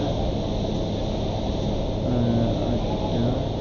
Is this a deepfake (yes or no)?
no